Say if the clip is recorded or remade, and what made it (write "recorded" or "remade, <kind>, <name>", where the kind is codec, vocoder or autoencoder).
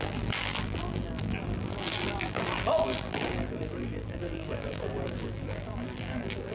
remade, vocoder, BigVGAN v2